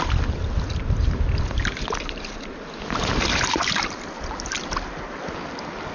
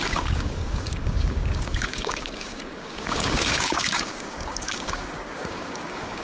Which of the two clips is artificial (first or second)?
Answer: second